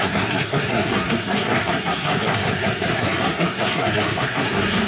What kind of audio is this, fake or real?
fake